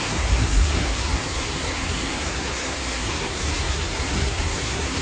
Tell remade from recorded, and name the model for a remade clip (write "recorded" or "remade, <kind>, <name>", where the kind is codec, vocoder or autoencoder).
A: remade, codec, SNAC